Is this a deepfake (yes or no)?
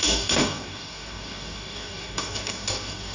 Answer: yes